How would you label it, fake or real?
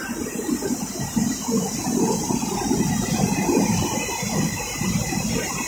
real